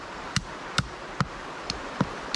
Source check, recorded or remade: recorded